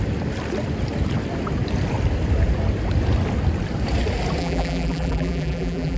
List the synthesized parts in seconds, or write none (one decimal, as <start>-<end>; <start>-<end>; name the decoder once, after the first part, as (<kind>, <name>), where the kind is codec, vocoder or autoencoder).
4.4-6.0 (vocoder, BigVGAN v2)